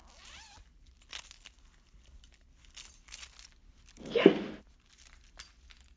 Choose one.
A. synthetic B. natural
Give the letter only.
B